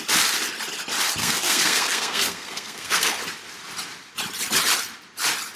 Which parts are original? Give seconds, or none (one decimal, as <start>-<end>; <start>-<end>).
0.0-1.2; 3.2-5.6